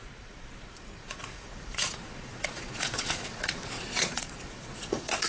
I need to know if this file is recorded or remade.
remade